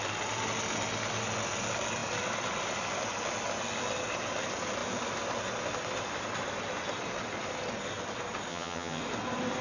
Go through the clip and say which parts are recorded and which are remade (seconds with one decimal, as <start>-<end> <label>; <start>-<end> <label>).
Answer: 0.0-8.5 recorded; 8.5-9.0 remade; 9.0-9.6 recorded